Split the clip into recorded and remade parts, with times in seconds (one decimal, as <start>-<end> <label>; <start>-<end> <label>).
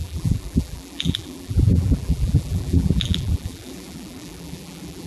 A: 0.0-5.1 remade